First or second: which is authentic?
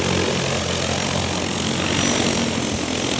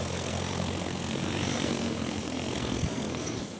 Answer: first